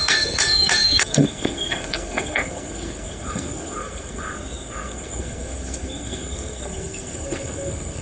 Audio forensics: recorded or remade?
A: remade